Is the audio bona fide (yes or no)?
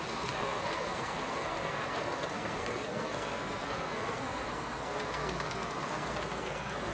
no